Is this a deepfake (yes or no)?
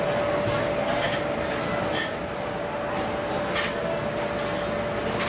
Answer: no